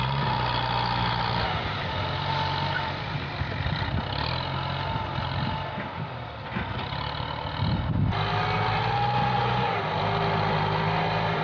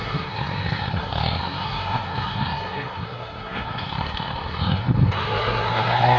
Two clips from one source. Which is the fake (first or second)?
second